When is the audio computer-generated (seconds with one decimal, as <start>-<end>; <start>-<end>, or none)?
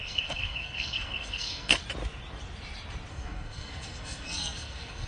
0.0-1.8; 3.1-5.1